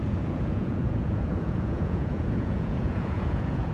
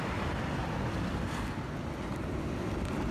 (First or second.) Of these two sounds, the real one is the second